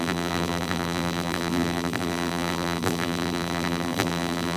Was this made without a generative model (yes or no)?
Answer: no